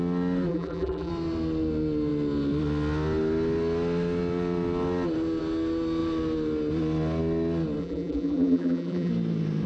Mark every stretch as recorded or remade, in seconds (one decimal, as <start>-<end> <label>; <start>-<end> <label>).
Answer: 0.0-0.5 recorded; 0.5-1.1 remade; 1.1-7.8 recorded; 7.8-9.1 remade; 9.1-9.7 recorded